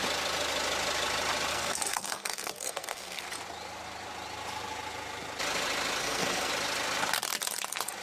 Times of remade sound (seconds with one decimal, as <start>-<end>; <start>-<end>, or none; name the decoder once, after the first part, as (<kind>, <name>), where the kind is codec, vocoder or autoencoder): 1.5-3.2 (codec, SNAC); 6.0-6.5